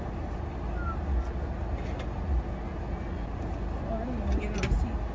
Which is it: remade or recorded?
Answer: recorded